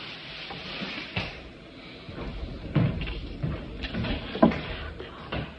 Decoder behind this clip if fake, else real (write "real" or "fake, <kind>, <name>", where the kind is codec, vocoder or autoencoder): real